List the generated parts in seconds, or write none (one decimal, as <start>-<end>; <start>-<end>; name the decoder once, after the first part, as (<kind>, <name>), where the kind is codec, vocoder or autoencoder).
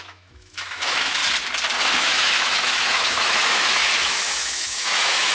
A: 0.0-1.2 (autoencoder, DAC-VAE); 2.0-5.3